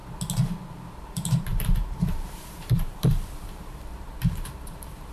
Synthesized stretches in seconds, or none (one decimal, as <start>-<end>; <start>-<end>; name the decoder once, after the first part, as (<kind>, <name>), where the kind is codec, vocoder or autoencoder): 1.1-5.1 (vocoder, BigVGAN v2)